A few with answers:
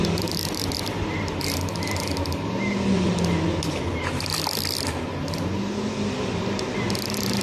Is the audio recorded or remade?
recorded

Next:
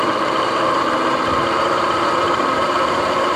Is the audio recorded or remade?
remade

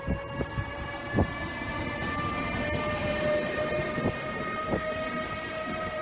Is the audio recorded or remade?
remade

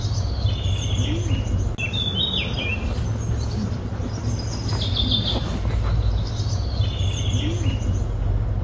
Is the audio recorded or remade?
recorded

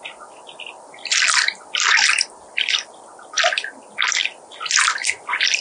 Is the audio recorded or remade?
recorded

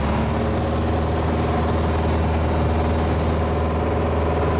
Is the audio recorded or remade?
recorded